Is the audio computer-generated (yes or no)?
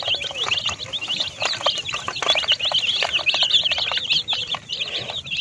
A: yes